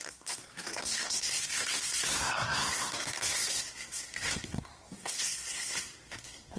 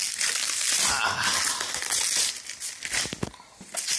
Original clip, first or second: second